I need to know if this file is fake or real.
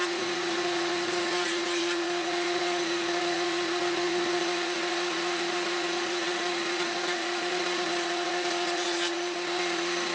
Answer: fake